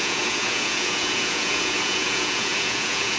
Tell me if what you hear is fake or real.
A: fake